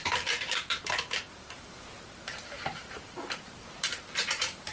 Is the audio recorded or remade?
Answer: remade